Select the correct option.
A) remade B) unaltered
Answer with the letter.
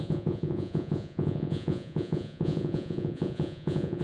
A